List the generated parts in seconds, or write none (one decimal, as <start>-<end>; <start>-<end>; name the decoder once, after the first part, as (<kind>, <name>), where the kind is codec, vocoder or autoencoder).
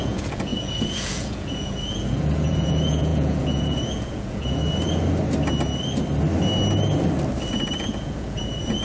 0.0-4.6 (vocoder, Vocos); 7.5-8.8